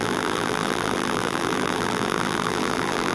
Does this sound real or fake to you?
fake